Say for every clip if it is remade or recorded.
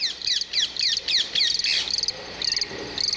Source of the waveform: recorded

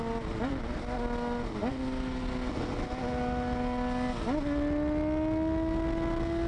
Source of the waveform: recorded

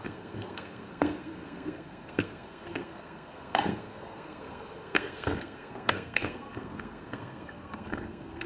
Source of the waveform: remade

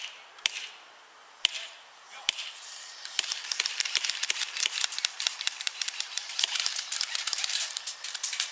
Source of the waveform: remade